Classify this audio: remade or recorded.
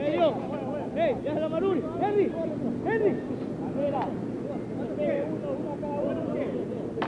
recorded